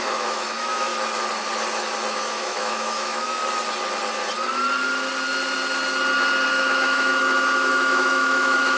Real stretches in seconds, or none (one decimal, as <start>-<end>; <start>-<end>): 0.9-2.1; 3.4-6.5; 7.1-7.7